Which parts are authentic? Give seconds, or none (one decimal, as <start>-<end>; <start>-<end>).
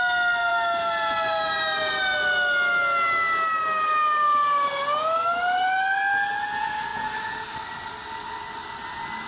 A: 0.0-9.3